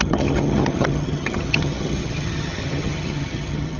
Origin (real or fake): fake